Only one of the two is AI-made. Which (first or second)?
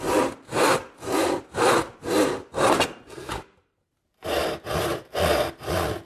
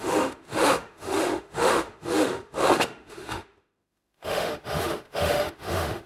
second